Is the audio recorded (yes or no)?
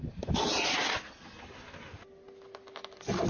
yes